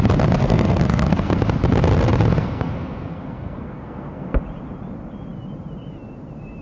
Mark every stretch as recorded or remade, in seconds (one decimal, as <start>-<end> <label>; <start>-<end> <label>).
0.0-0.4 recorded; 0.4-1.4 remade; 1.4-2.4 recorded; 2.4-4.4 remade; 4.4-6.6 recorded